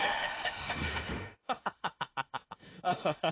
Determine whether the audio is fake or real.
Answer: fake